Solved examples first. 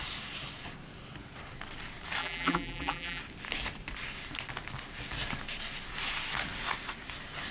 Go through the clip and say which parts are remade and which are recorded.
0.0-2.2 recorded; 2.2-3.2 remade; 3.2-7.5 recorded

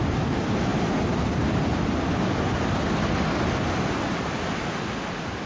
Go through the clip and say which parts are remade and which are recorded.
0.0-0.7 recorded; 0.7-2.1 remade; 2.1-5.5 recorded

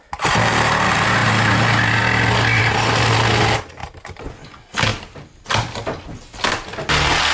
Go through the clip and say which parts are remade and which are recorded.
0.0-3.8 recorded; 3.8-4.3 remade; 4.3-7.3 recorded

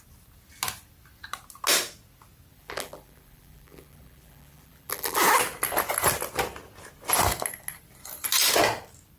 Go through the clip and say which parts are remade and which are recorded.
0.0-2.5 recorded; 2.5-5.2 remade; 5.2-9.2 recorded

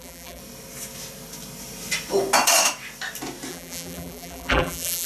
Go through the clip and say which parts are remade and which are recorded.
0.0-0.4 remade; 0.4-3.5 recorded; 3.5-5.1 remade